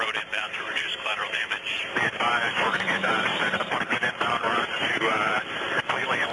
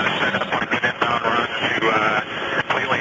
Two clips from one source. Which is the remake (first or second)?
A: first